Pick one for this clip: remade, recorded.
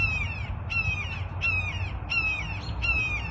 recorded